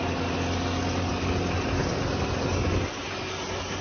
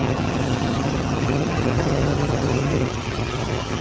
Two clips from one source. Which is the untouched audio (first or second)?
first